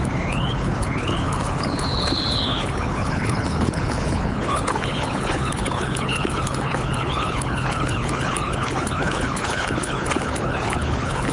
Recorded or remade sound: remade